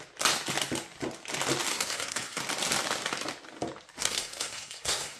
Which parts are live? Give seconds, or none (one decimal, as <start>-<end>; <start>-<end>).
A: 0.0-1.7; 2.4-4.0